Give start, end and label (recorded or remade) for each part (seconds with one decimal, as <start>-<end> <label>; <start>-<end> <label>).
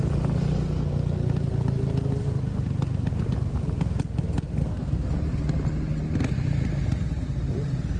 0.0-4.6 recorded; 4.6-5.1 remade; 5.1-8.0 recorded